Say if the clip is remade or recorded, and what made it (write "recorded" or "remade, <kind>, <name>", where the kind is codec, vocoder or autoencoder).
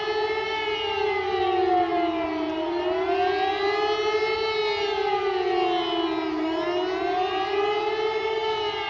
recorded